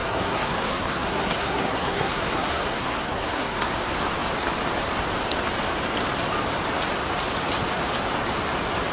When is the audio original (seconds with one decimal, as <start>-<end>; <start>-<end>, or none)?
3.7-8.9